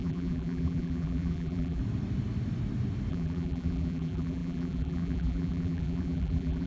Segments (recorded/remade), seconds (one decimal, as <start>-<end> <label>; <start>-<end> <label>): 0.0-1.8 remade; 1.8-3.1 recorded; 3.1-6.7 remade